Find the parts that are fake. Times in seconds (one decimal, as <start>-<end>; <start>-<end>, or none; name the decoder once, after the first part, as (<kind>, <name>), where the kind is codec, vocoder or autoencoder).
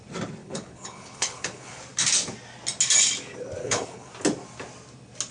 0.4-1.8 (codec, HILCodec); 3.6-4.1